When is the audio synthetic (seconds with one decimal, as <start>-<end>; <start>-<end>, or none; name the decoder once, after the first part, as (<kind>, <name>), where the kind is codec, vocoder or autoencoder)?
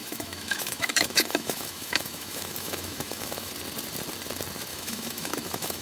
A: 0.0-3.5 (autoencoder, DAC-VAE); 4.7-5.8